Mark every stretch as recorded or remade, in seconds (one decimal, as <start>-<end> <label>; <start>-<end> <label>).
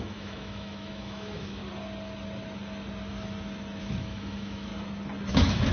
0.0-1.6 remade; 1.6-3.8 recorded; 3.8-4.7 remade; 4.7-5.3 recorded; 5.3-5.7 remade